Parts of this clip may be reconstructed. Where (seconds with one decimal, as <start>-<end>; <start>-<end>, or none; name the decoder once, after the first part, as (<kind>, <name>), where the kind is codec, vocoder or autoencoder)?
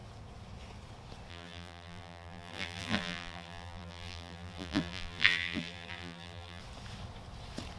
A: 1.3-6.6 (vocoder, BigVGAN v2)